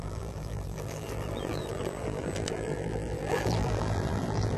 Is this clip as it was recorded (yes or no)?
no